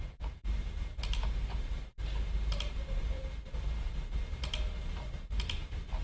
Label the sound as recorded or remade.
remade